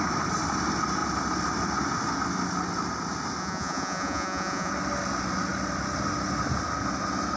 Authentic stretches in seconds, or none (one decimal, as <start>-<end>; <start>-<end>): 0.0-3.4; 4.7-7.4

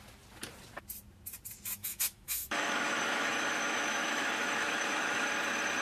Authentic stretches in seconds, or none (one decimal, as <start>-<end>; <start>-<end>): 0.0-1.8; 5.3-5.8

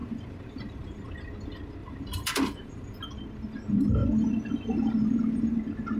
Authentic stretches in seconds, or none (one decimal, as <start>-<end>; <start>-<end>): 1.0-1.8; 3.0-4.0; 5.6-6.0

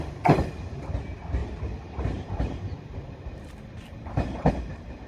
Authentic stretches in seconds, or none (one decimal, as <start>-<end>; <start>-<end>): 0.0-1.4; 4.5-5.1

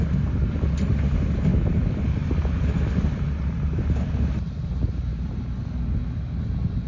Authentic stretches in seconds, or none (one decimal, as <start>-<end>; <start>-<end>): 0.0-6.9